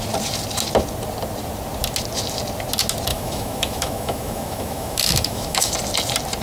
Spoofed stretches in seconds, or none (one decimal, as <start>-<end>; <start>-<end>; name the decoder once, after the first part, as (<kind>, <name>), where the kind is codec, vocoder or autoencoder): 3.1-5.7 (autoencoder, DAC-VAE)